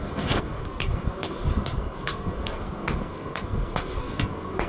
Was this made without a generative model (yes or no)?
no